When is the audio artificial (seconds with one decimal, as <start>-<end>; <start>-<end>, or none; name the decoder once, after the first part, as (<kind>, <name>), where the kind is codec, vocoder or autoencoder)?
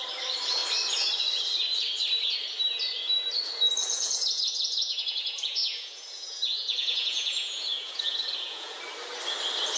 3.8-8.8 (vocoder, Vocos)